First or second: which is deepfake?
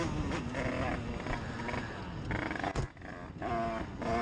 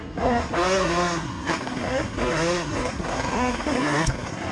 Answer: second